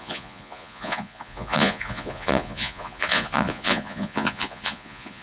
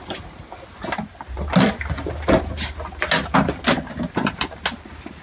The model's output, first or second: first